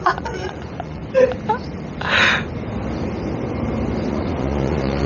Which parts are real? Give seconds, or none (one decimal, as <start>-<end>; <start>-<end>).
1.0-4.1